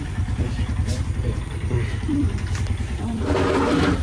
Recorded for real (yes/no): no